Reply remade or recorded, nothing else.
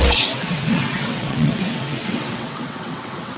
remade